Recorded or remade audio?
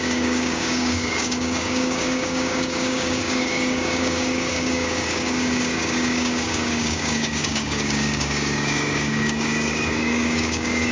remade